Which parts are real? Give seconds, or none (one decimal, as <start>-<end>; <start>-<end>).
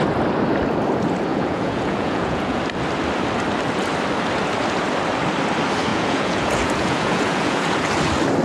0.0-1.3; 2.6-5.9; 7.8-8.4